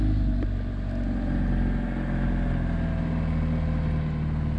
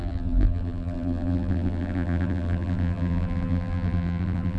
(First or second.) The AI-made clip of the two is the second